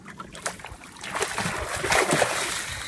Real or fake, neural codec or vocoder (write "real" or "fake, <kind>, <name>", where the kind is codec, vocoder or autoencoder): real